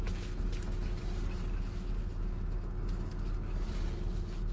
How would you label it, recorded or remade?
recorded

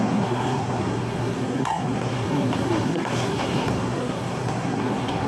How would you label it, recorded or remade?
remade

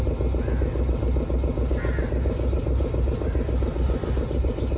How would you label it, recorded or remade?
recorded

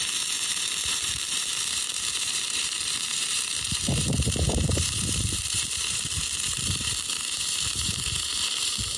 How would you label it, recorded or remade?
remade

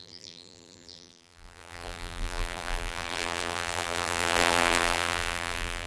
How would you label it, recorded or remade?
remade